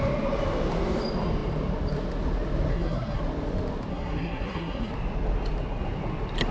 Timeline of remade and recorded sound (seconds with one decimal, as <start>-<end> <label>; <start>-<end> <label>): 0.0-2.7 recorded; 2.7-3.2 remade; 3.2-3.9 recorded; 3.9-4.9 remade; 4.9-6.5 recorded